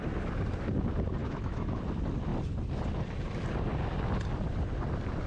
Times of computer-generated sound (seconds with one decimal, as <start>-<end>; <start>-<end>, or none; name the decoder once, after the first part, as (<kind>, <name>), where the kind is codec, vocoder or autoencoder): 1.2-1.8 (autoencoder, DAC-VAE)

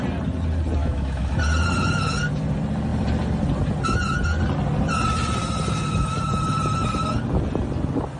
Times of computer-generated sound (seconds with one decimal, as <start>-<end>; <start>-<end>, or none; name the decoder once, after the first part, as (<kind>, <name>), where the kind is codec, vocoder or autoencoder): 0.8-1.3 (autoencoder, DAC-VAE)

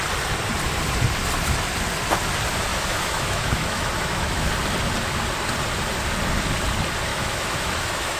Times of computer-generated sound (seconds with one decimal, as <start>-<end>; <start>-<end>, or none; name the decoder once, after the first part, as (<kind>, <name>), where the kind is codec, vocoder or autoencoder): 2.7-4.5 (autoencoder, DAC-VAE); 7.1-8.2

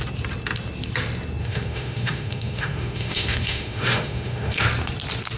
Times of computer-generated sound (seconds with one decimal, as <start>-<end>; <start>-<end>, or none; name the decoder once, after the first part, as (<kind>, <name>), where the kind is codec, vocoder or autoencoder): 1.4-4.6 (autoencoder, DAC-VAE)

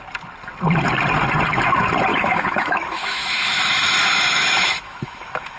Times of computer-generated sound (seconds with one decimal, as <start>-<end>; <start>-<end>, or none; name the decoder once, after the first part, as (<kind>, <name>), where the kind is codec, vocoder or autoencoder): 2.1-5.6 (autoencoder, DAC-VAE)

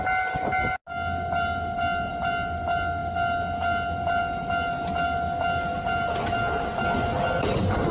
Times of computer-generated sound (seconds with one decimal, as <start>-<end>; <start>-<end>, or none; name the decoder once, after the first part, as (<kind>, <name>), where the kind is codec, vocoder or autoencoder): none

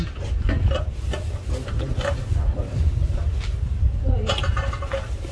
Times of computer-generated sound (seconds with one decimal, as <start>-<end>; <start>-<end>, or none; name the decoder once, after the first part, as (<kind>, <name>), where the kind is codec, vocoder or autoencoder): none

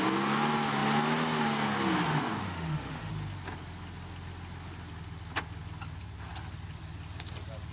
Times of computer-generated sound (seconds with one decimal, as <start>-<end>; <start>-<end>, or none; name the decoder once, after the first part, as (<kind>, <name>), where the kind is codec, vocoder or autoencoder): 2.4-3.1 (autoencoder, DAC-VAE)